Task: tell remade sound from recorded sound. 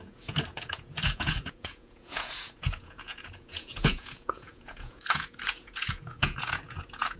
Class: remade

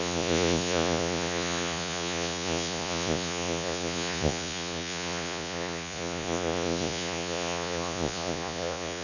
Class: remade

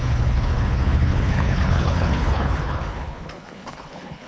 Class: remade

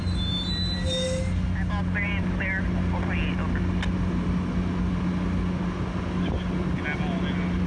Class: recorded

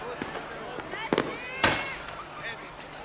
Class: recorded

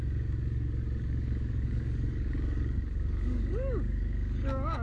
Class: remade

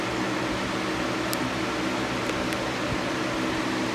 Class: recorded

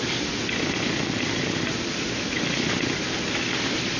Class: recorded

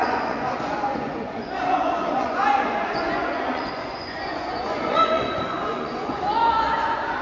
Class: remade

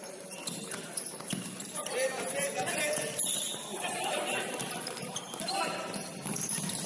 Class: remade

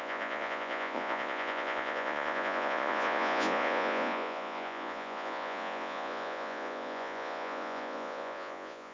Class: remade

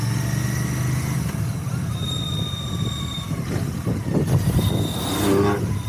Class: recorded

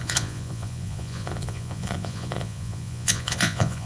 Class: remade